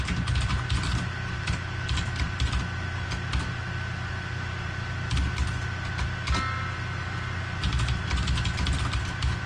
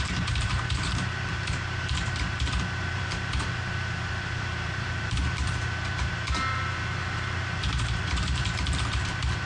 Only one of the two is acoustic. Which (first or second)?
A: first